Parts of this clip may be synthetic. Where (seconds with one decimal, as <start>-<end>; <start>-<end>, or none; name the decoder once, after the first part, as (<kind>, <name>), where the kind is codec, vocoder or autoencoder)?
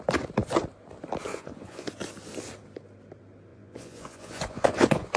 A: 1.3-1.9 (vocoder, Vocos); 3.5-5.2